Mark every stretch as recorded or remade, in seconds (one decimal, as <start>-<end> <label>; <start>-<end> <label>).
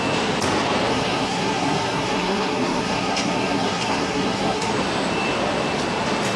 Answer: 0.0-0.9 recorded; 0.9-4.7 remade; 4.7-6.4 recorded